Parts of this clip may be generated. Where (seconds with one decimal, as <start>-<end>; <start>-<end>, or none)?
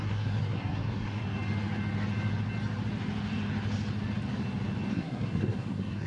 0.0-1.2; 4.9-6.1